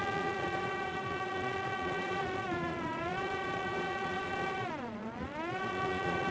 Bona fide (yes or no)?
no